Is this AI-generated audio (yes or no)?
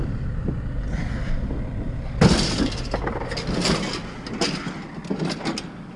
no